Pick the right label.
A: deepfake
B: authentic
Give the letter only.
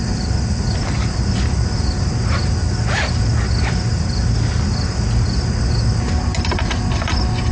B